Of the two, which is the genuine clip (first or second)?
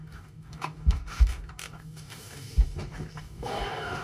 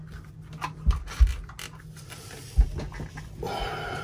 second